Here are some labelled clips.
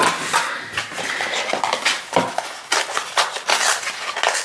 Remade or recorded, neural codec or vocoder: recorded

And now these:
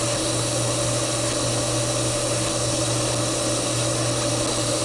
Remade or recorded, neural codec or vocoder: recorded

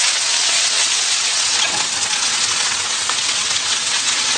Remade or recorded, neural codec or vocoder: remade, vocoder, WaveNeXt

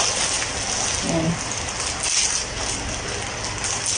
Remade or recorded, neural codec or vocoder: recorded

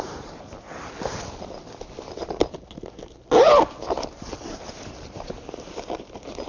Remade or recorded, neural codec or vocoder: recorded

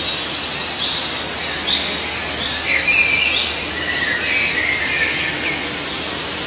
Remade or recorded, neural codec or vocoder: recorded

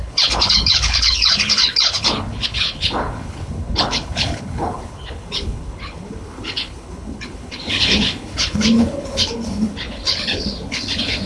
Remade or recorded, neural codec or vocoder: remade, codec, HILCodec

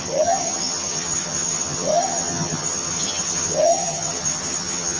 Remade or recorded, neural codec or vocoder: remade, vocoder, HiFi-GAN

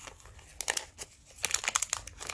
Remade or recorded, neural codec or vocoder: recorded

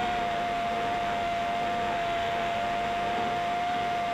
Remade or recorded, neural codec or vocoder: remade, autoencoder, DAC-VAE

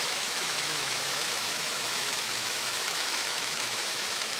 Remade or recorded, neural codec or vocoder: remade, autoencoder, DAC-VAE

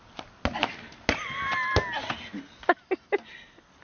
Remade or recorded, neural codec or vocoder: recorded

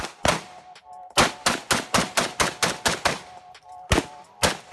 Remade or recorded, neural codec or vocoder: recorded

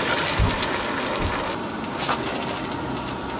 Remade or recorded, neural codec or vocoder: remade, vocoder, BigVGAN v2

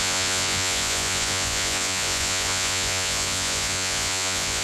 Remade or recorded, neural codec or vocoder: remade, vocoder, Vocos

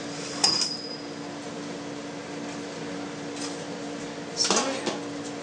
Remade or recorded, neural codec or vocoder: recorded